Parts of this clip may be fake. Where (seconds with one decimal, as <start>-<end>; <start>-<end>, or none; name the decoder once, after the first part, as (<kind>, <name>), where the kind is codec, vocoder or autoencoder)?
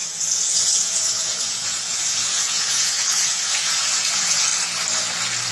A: 0.0-4.5 (vocoder, Vocos)